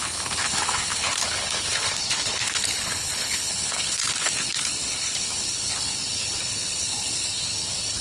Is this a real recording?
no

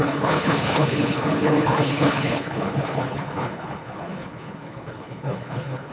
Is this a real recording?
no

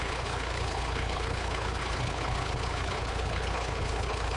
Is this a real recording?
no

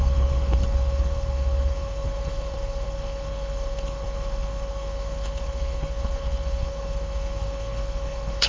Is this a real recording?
no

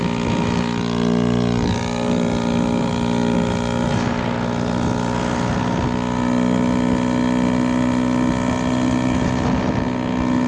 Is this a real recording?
yes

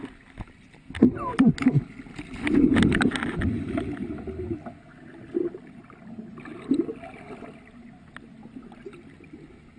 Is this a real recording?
yes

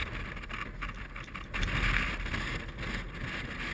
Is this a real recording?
yes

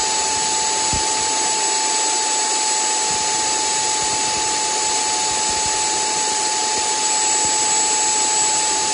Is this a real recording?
yes